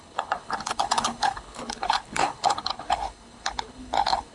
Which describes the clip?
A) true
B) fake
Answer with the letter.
B